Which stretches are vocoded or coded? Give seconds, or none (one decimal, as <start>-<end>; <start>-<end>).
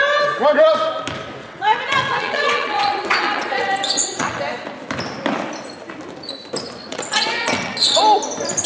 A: 1.4-4.4; 6.9-8.0